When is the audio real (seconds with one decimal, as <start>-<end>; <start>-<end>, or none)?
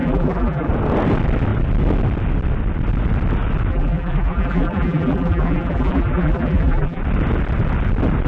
0.7-3.7; 7.0-8.3